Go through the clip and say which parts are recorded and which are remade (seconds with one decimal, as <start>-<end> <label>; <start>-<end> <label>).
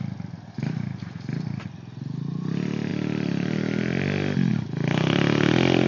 0.0-5.9 recorded